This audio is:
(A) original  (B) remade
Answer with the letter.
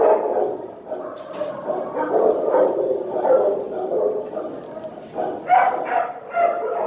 A